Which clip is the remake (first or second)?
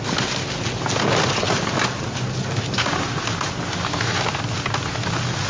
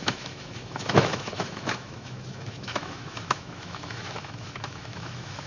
second